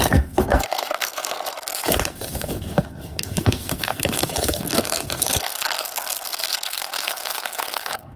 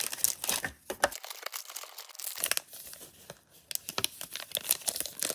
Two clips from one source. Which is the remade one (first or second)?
first